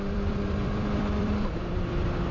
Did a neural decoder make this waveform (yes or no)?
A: yes